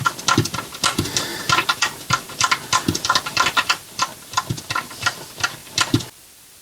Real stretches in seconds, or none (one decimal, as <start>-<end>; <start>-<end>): 0.0-1.3; 5.0-5.6